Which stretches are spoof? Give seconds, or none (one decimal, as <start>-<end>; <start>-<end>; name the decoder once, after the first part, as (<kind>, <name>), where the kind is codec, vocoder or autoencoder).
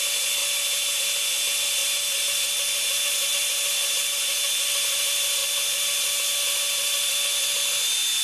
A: none